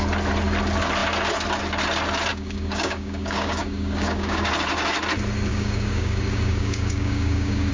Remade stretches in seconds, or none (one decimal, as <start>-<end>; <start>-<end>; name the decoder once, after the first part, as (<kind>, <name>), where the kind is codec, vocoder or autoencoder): 2.3-4.5 (codec, DAC); 5.5-7.7